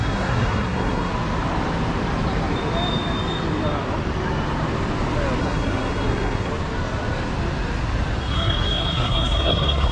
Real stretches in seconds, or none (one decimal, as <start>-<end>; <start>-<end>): 1.1-5.4; 6.5-8.2